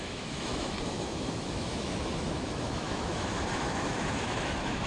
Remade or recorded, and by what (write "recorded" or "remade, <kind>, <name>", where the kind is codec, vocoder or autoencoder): remade, autoencoder, DAC-VAE